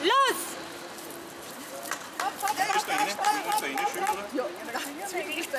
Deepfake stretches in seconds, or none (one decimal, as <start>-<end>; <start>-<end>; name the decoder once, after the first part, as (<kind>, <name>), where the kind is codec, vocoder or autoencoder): 0.4-2.9 (vocoder, BigVGAN v2)